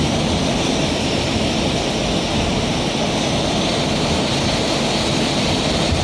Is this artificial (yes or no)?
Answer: no